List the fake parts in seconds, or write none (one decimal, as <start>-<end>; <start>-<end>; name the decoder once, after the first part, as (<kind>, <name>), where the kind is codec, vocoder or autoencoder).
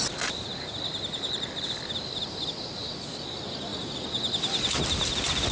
none